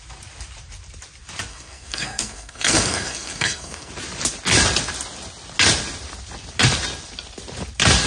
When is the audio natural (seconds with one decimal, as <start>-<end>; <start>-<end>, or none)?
0.0-1.5; 3.9-8.1